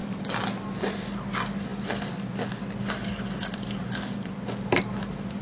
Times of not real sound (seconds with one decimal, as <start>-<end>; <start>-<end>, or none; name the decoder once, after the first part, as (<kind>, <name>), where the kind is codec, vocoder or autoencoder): none

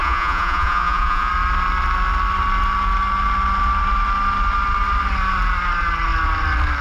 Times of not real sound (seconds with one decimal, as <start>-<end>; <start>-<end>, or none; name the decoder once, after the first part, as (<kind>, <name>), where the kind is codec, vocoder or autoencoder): 0.0-1.3 (vocoder, Vocos)

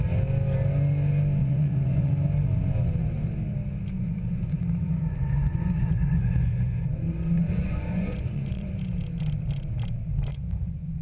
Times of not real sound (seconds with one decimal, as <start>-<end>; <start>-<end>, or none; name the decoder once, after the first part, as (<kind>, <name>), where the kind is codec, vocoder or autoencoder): 1.4-2.1 (vocoder, Vocos); 4.0-8.7; 10.3-11.0

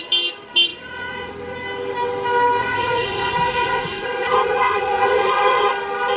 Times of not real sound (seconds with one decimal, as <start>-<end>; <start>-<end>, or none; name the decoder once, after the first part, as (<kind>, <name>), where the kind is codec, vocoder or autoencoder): 0.7-1.3 (vocoder, Vocos); 2.6-5.7

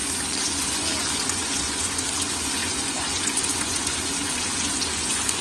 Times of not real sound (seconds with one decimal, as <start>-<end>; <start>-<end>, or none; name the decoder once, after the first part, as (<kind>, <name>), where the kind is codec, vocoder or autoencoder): 0.0-5.4 (vocoder, Vocos)

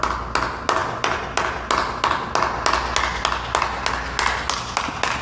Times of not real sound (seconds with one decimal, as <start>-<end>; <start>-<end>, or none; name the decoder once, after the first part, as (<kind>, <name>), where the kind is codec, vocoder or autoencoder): none